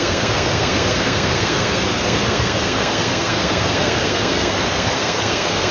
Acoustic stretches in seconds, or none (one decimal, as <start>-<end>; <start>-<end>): none